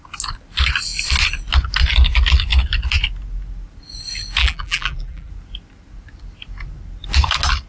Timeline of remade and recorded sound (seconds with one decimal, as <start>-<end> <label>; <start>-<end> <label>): 0.0-4.4 recorded; 4.4-5.3 remade; 5.3-7.7 recorded